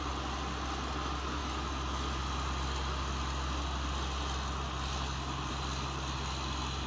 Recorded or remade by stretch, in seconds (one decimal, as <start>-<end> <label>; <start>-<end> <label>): 0.0-6.9 recorded

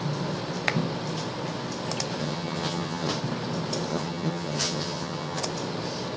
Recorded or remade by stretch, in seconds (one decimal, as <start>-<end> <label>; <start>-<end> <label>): 0.0-2.2 recorded; 2.2-3.1 remade; 3.1-3.9 recorded; 3.9-5.4 remade; 5.4-6.2 recorded

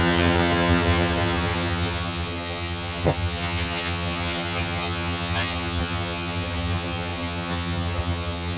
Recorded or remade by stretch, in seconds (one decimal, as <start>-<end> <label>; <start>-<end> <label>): 0.0-8.6 remade

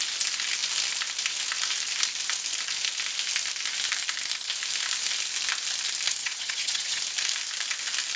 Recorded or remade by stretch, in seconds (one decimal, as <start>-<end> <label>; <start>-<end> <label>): 0.0-6.2 recorded; 6.2-7.0 remade; 7.0-8.2 recorded

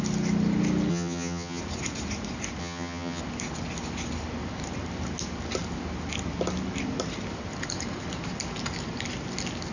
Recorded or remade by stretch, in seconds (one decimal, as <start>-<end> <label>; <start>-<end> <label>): 0.0-0.9 recorded; 0.9-1.6 remade; 1.6-2.6 recorded; 2.6-3.2 remade; 3.2-9.7 recorded

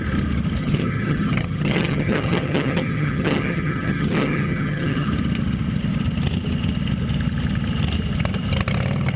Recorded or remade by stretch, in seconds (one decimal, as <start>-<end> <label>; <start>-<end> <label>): 0.0-0.6 recorded; 0.6-5.1 remade; 5.1-9.2 recorded

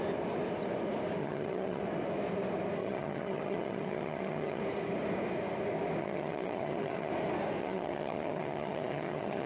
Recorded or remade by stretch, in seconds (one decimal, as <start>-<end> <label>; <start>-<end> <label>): 0.0-1.2 recorded; 1.2-1.8 remade; 1.8-2.8 recorded; 2.8-4.6 remade; 4.6-6.0 recorded; 6.0-7.1 remade; 7.1-7.6 recorded; 7.6-9.5 remade